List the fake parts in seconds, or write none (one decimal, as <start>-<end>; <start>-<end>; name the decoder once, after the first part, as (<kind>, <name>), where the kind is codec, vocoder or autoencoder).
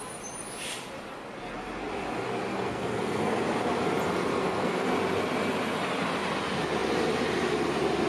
2.5-3.4 (codec, SNAC); 4.4-4.9